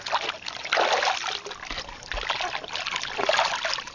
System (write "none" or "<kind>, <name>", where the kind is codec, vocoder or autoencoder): none